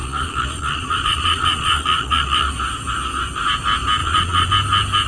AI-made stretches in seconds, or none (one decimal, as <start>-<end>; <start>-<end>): 0.0-2.5; 4.0-4.5